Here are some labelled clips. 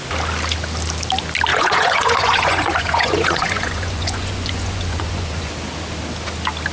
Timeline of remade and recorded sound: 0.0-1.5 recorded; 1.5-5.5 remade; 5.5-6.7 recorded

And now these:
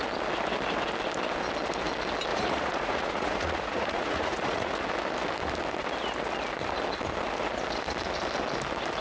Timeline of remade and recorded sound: 0.0-2.3 recorded; 2.3-4.7 remade; 4.7-9.0 recorded

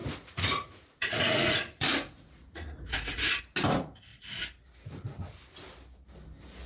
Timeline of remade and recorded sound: 0.0-3.4 remade; 3.4-6.7 recorded

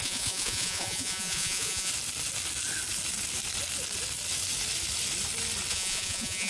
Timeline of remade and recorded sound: 0.0-1.9 remade; 1.9-5.7 recorded; 5.7-6.5 remade

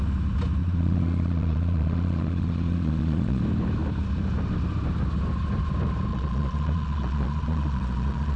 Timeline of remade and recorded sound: 0.0-0.6 recorded; 0.6-3.4 remade; 3.4-6.1 recorded; 6.1-8.4 remade

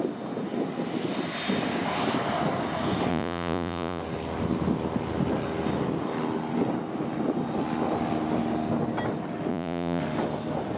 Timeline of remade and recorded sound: 0.0-3.1 recorded; 3.1-4.0 remade; 4.0-9.5 recorded; 9.5-10.0 remade; 10.0-10.8 recorded

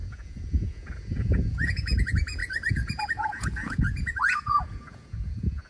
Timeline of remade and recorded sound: 0.0-5.7 remade